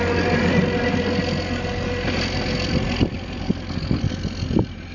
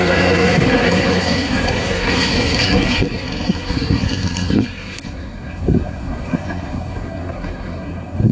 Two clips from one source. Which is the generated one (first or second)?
second